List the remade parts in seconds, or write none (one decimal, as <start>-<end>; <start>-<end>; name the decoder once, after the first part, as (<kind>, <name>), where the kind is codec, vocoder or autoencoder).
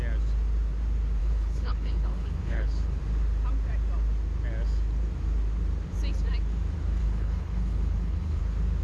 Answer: 1.2-3.0 (codec, HILCodec); 7.0-8.4